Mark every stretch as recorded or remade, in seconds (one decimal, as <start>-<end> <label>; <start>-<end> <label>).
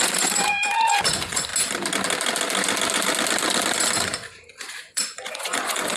0.0-1.5 remade; 1.5-4.8 recorded; 4.8-6.0 remade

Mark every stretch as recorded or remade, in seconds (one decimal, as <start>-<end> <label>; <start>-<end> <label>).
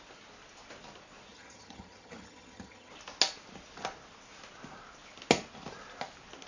0.0-1.3 recorded; 1.3-2.9 remade; 2.9-6.5 recorded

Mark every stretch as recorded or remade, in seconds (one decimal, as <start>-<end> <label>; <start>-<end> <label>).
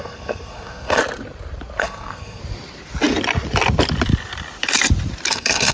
0.0-1.0 remade; 1.0-1.8 recorded; 1.8-2.4 remade; 2.4-5.3 recorded; 5.3-5.7 remade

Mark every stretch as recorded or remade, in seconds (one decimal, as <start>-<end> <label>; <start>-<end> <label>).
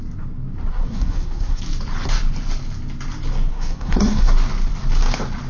0.0-0.7 recorded; 0.7-1.6 remade; 1.6-3.5 recorded; 3.5-4.3 remade; 4.3-5.5 recorded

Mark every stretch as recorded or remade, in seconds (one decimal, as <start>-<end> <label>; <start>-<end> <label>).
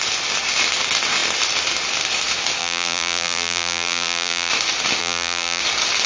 0.0-2.6 recorded; 2.6-4.5 remade; 4.5-5.0 recorded; 5.0-5.6 remade; 5.6-6.1 recorded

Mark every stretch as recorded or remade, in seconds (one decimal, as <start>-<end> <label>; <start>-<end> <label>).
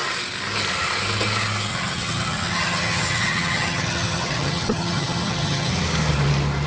0.0-1.7 recorded; 1.7-5.7 remade; 5.7-6.7 recorded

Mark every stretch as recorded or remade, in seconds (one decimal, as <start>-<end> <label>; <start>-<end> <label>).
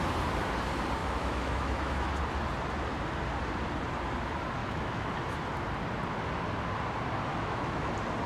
0.0-1.0 recorded; 1.0-2.1 remade; 2.1-4.6 recorded; 4.6-5.1 remade; 5.1-7.3 recorded; 7.3-7.9 remade; 7.9-8.3 recorded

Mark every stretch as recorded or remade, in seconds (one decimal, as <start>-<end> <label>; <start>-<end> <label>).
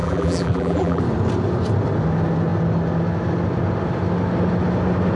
0.0-1.0 remade; 1.0-5.2 recorded